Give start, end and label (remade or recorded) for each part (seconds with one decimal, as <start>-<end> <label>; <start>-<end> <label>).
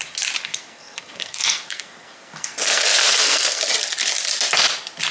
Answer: 0.0-0.5 recorded; 0.5-3.6 remade; 3.6-5.1 recorded